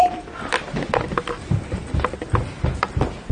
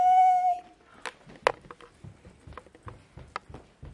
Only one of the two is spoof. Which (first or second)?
first